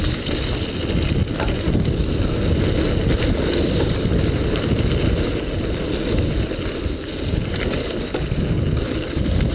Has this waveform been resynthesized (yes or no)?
no